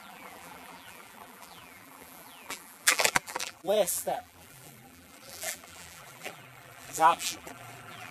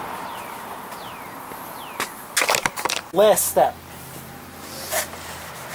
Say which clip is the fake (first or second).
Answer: first